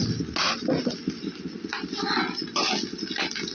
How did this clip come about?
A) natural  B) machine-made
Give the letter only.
A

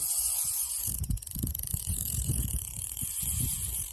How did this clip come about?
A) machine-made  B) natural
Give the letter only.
A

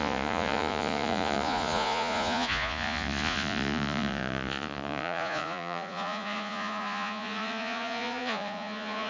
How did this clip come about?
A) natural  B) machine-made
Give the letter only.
B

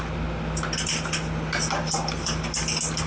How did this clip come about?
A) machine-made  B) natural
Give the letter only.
B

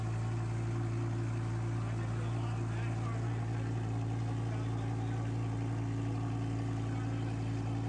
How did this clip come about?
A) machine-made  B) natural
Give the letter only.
B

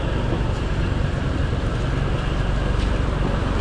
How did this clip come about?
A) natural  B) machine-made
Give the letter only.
A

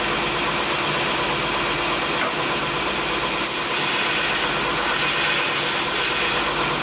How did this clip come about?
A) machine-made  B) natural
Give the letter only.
B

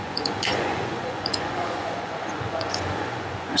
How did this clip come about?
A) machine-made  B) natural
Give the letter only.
A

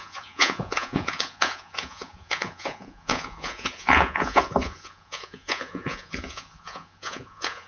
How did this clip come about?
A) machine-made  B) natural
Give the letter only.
A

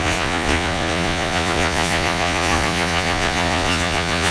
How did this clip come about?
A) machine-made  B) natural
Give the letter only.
A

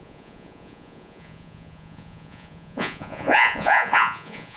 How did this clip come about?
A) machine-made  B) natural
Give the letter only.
A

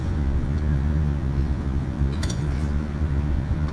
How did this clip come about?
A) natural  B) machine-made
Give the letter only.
B